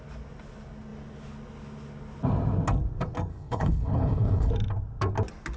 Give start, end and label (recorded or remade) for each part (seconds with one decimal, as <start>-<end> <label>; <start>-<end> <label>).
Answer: 0.0-3.3 recorded; 3.3-4.5 remade; 4.5-5.6 recorded